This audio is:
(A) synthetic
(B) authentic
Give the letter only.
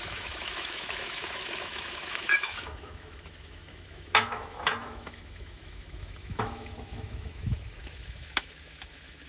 A